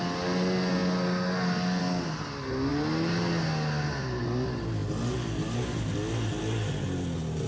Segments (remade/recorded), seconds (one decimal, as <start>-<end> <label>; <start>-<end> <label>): 0.0-7.5 recorded